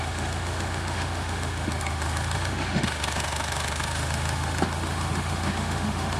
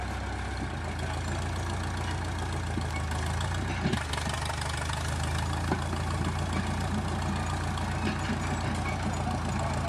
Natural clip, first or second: second